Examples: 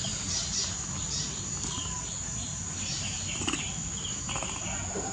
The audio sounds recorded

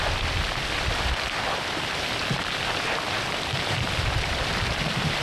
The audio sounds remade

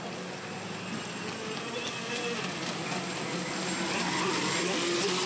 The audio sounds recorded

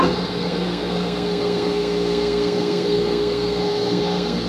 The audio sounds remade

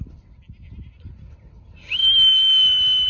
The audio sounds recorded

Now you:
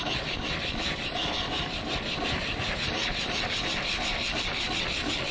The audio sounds recorded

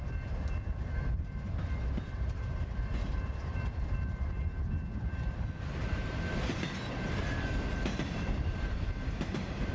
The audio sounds remade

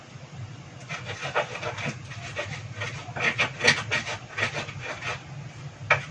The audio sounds recorded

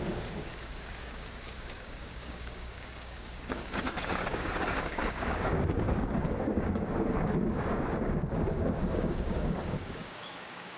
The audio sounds remade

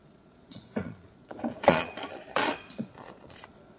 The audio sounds remade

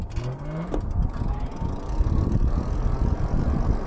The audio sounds recorded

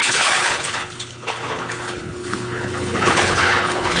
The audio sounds remade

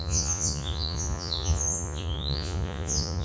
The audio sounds remade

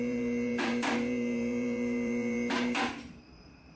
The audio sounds remade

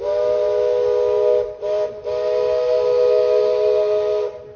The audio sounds recorded